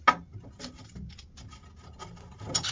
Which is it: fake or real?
real